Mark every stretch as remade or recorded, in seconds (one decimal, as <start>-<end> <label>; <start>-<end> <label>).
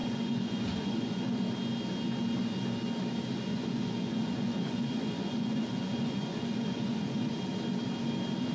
0.0-1.4 remade; 1.4-3.5 recorded; 3.5-7.4 remade; 7.4-8.5 recorded